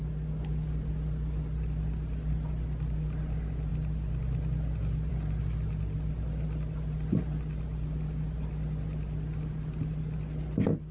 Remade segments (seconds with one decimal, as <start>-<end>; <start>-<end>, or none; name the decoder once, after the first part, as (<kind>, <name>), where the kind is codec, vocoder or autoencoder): none